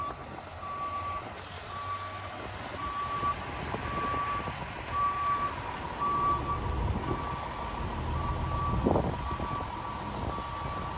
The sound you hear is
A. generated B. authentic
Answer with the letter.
B